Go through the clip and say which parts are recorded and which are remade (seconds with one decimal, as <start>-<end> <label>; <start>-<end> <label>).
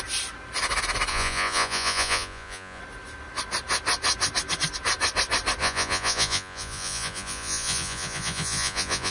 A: 0.0-1.1 recorded; 1.1-2.8 remade; 2.8-5.6 recorded; 5.6-9.1 remade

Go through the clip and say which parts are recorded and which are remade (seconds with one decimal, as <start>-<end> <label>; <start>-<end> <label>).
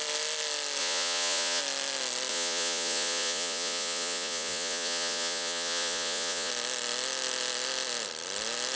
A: 0.0-0.8 recorded; 0.8-1.6 remade; 1.6-2.3 recorded; 2.3-6.5 remade; 6.5-8.8 recorded